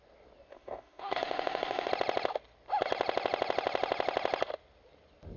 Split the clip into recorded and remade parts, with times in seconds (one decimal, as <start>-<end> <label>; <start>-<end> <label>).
0.0-0.5 recorded; 0.5-1.9 remade; 1.9-5.4 recorded